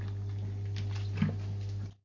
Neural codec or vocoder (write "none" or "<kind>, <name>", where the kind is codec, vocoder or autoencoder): none